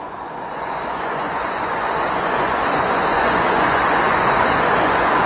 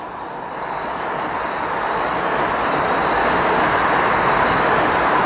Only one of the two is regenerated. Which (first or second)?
first